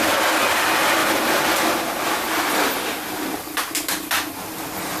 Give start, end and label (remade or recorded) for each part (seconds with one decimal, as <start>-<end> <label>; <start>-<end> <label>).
0.0-5.0 recorded